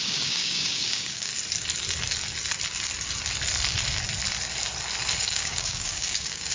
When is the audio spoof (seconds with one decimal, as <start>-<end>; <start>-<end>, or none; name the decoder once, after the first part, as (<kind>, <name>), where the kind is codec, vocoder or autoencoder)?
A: 0.0-1.3 (codec, DAC); 5.2-6.5